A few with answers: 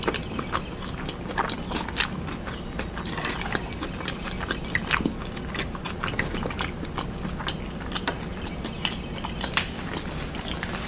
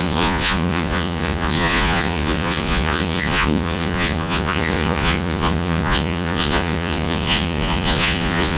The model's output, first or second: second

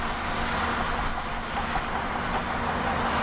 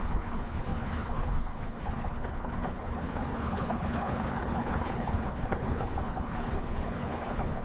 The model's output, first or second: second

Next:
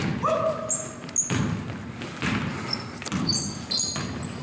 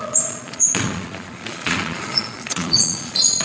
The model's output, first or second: second